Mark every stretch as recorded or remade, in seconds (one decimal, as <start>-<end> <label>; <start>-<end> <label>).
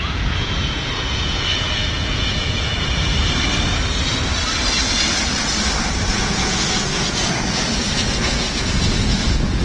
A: 0.0-3.1 remade; 3.1-6.1 recorded; 6.1-9.6 remade